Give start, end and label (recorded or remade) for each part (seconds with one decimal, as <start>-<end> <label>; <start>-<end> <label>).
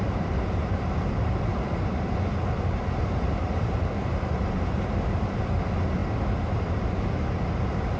0.0-1.5 recorded; 1.5-5.6 remade; 5.6-8.0 recorded